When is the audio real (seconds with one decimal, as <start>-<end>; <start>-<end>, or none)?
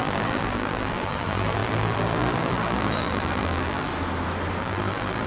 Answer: 3.9-4.6